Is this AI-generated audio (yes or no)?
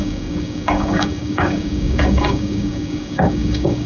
yes